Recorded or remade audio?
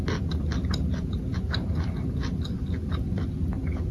recorded